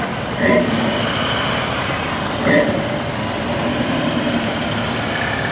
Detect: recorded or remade recorded